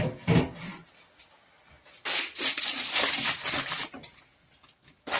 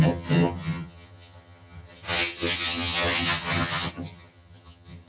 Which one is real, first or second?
first